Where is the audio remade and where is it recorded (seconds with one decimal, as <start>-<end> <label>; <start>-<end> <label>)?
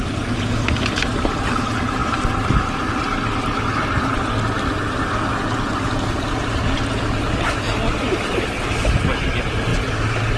0.0-10.4 recorded